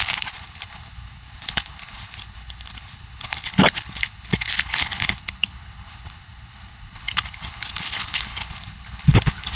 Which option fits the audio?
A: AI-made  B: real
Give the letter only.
A